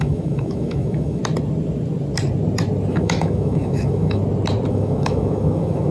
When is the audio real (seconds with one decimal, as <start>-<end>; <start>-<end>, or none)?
1.2-2.9; 4.2-4.7